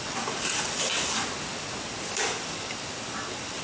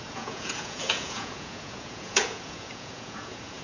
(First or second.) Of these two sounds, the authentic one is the first